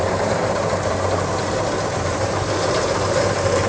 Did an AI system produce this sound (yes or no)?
yes